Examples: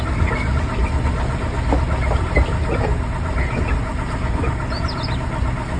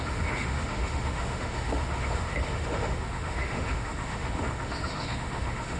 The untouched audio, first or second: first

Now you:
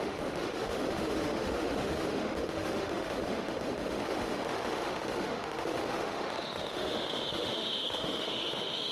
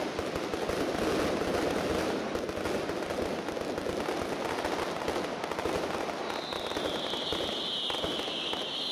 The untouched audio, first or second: second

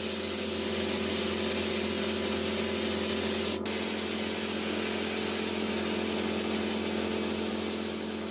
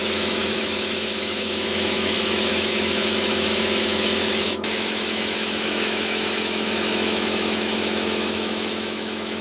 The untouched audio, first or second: first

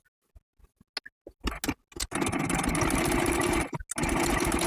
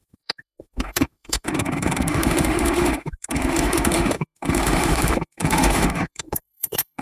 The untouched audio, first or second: first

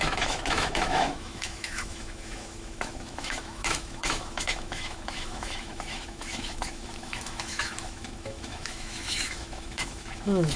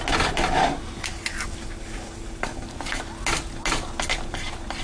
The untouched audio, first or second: second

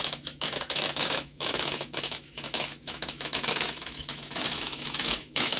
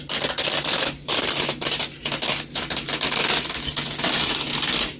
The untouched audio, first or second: second